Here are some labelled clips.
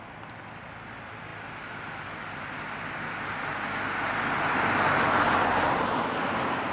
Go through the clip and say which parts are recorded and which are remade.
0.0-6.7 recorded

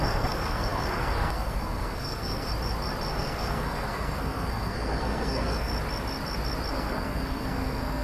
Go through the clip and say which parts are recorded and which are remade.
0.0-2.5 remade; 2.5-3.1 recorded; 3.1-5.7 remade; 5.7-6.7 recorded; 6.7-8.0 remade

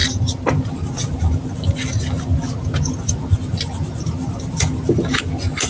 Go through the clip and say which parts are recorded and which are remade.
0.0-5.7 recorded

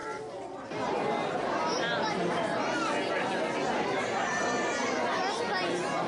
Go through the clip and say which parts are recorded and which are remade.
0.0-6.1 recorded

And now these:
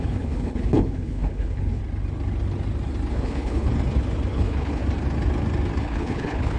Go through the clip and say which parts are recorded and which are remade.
0.0-1.8 remade; 1.8-3.1 recorded; 3.1-3.7 remade; 3.7-4.3 recorded; 4.3-4.8 remade; 4.8-5.8 recorded; 5.8-6.6 remade

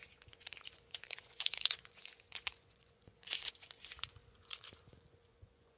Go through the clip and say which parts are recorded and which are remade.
0.0-5.8 remade